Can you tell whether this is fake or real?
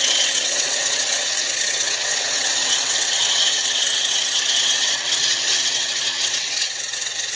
fake